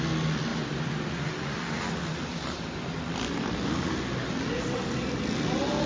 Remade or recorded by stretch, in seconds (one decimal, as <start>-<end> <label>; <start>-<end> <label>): 0.0-5.9 recorded